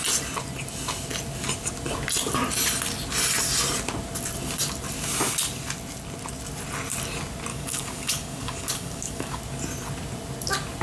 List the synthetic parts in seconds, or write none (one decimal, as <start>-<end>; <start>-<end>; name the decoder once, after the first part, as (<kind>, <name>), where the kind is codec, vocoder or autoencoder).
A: 7.5-9.4 (codec, DAC)